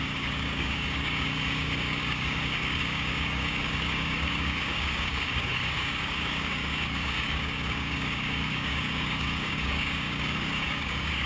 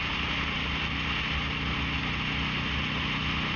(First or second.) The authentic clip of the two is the second